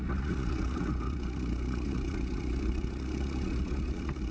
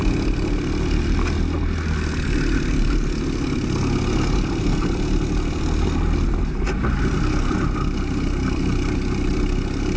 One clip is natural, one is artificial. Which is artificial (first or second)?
first